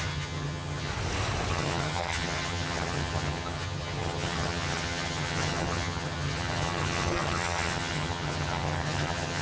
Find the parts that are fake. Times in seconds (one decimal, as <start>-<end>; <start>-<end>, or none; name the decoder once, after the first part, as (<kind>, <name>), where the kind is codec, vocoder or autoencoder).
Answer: 0.0-0.9 (vocoder, HiFi-GAN); 1.5-9.4